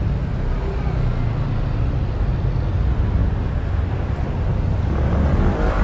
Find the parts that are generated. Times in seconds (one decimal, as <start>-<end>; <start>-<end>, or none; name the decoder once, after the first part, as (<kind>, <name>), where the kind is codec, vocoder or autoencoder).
none